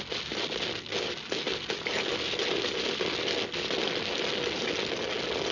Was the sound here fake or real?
real